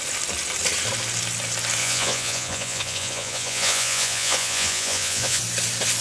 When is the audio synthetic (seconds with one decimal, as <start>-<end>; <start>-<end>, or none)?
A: 1.8-5.4